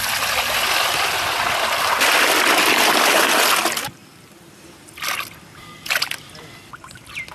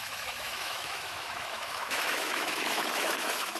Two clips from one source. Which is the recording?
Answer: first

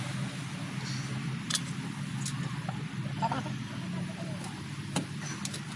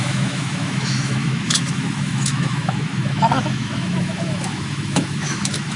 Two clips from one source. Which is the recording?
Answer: first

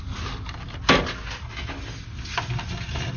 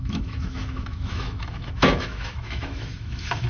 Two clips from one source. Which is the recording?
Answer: first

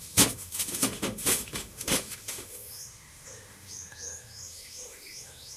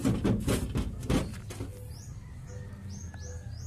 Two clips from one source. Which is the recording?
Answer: second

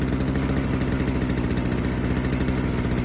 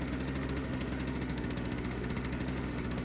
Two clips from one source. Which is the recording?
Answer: first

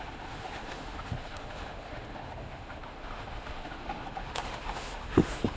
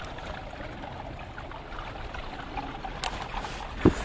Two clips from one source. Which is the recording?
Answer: second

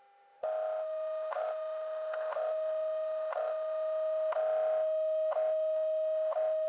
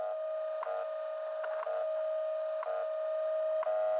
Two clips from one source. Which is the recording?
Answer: second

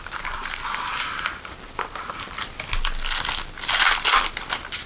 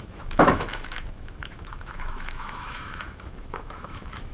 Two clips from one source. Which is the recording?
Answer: first